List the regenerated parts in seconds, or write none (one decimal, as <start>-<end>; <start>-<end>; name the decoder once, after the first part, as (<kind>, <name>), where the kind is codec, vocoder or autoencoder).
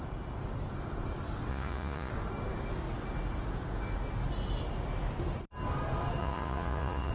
1.5-2.1 (vocoder, Vocos); 6.2-7.1